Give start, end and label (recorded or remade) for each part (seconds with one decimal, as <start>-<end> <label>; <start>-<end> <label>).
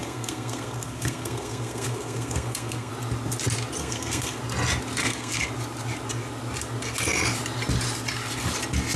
0.0-2.9 remade; 2.9-3.8 recorded; 3.8-4.4 remade; 4.4-5.0 recorded; 5.0-5.5 remade; 5.5-9.0 recorded